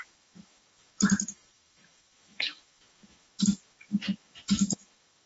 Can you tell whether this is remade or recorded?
remade